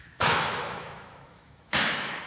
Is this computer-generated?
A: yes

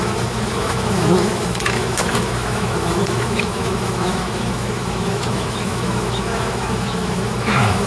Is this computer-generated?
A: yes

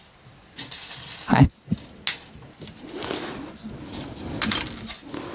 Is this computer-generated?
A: no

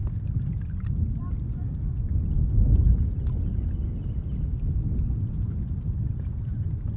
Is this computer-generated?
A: no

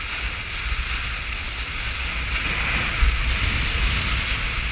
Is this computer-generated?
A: no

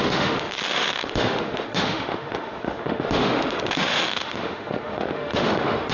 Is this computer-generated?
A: yes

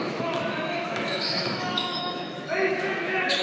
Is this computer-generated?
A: yes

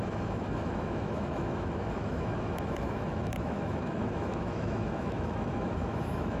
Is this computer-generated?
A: yes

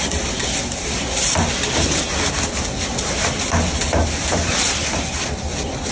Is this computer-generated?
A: no